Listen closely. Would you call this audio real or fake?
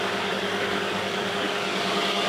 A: fake